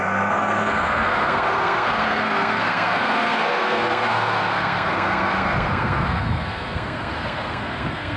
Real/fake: fake